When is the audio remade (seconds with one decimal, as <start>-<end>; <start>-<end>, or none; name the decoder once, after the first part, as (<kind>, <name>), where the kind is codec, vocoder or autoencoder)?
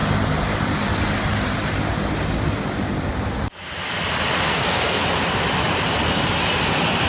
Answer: 4.5-5.0 (codec, SNAC)